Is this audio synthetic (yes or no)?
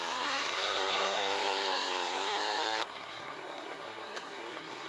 yes